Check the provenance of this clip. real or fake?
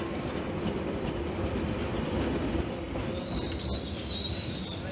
real